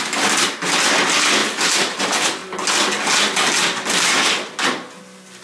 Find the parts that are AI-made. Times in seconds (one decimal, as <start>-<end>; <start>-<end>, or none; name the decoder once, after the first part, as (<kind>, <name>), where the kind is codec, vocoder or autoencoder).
none